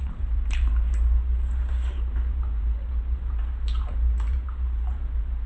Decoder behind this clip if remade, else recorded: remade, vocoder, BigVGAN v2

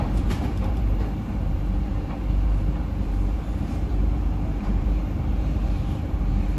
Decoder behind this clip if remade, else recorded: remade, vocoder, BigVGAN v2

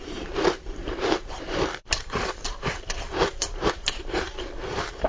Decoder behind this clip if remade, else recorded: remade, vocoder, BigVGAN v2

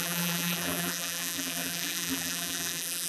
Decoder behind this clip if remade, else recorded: remade, vocoder, BigVGAN v2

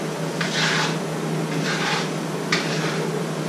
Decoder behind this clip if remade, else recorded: recorded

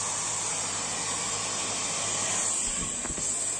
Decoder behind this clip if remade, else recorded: recorded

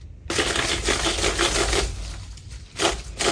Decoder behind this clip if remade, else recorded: recorded